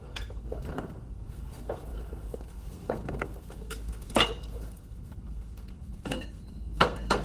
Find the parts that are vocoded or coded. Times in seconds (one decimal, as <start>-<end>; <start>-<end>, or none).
0.0-7.2